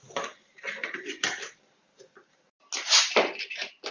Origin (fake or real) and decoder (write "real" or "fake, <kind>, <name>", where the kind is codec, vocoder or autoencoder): real